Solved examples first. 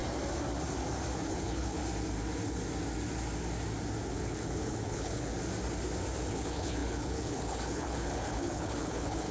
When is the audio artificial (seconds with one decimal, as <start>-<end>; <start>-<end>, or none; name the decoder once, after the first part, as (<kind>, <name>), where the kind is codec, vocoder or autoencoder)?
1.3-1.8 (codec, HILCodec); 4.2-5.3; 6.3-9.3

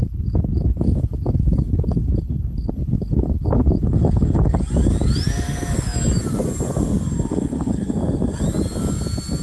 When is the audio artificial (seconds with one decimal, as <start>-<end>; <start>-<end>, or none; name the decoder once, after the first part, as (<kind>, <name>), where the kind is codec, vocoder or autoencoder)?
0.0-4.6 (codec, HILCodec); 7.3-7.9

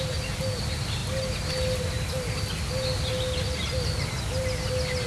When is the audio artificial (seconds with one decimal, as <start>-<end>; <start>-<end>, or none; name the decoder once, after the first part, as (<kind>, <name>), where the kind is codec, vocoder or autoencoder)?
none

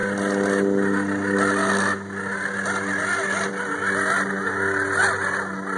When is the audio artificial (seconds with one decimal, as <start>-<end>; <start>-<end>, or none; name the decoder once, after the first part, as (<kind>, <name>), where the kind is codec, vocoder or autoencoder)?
none

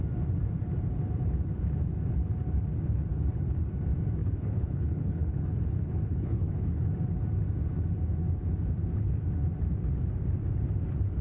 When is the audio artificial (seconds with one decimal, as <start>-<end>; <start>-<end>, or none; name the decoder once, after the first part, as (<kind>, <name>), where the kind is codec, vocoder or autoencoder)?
3.1-3.6 (codec, HILCodec); 4.2-6.9